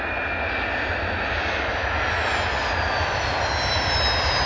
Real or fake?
real